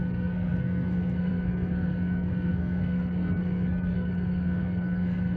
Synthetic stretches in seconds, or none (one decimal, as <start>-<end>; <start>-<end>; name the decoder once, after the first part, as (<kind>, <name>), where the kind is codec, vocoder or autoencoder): 0.0-5.4 (codec, SNAC)